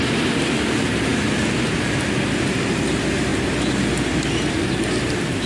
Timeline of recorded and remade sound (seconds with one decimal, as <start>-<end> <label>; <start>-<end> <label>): 0.0-5.5 recorded